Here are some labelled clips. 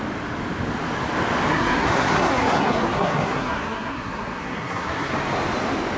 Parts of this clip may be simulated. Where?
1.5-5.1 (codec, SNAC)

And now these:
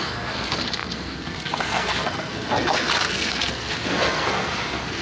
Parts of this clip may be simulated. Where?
0.0-5.0 (codec, SNAC)

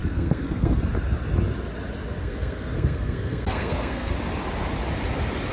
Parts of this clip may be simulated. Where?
0.0-0.8 (codec, SNAC); 2.2-4.1

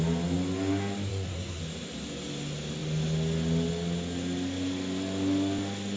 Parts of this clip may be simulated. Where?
1.1-1.6 (codec, SNAC)